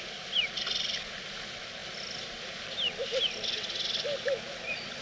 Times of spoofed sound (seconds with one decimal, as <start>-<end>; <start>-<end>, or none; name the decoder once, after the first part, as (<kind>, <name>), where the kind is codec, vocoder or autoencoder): none